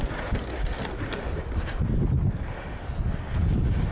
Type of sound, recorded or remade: recorded